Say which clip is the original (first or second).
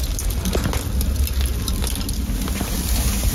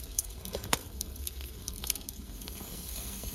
first